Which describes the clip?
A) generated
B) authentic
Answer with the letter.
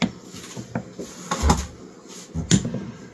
B